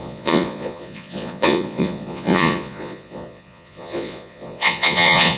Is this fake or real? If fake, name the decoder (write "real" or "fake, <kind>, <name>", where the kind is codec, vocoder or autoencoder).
fake, vocoder, Vocos